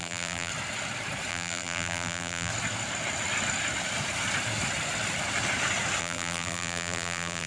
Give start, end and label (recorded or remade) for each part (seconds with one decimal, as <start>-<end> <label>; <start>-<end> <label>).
0.0-0.5 remade; 0.5-1.3 recorded; 1.3-2.5 remade; 2.5-6.0 recorded; 6.0-7.5 remade